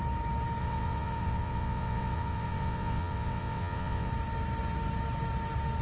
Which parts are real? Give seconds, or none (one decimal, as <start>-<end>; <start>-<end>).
0.0-0.6; 4.1-5.8